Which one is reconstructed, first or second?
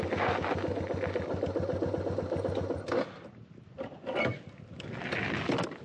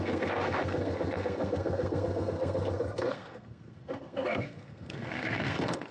second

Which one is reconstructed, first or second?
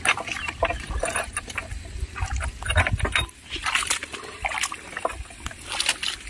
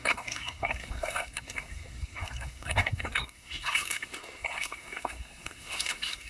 second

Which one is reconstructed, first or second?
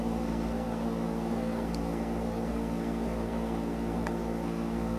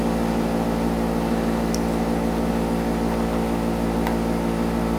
first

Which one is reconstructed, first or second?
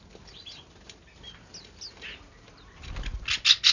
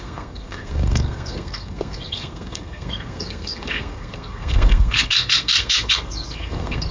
second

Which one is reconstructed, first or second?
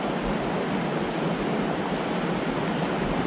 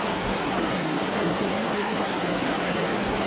second